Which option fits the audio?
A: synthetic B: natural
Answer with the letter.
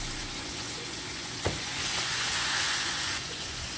A